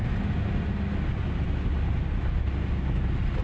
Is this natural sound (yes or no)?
yes